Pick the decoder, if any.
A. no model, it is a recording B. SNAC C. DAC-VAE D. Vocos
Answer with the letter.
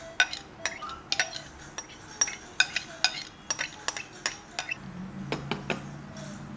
A